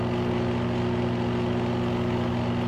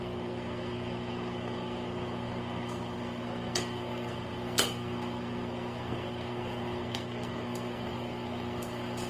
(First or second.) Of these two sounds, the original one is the first